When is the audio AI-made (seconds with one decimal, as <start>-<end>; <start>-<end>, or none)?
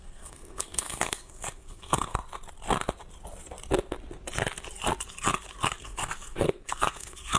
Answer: 0.0-2.2; 5.8-7.4